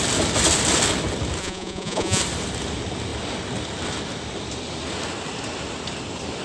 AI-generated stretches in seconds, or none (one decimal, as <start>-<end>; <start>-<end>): 1.4-2.2